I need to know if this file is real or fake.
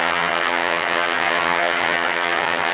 fake